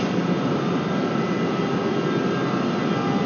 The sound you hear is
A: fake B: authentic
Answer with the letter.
B